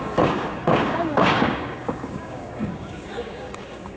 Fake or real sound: fake